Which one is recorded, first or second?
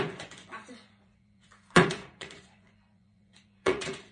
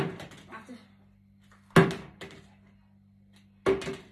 second